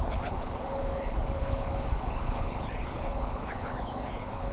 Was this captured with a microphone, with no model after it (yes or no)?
no